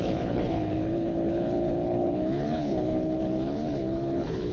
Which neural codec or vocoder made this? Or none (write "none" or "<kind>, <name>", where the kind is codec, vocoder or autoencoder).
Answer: codec, HILCodec